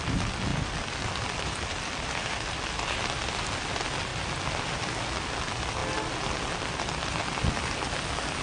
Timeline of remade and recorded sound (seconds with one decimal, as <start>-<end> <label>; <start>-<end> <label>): 0.0-0.5 recorded; 0.5-2.5 remade; 2.5-8.4 recorded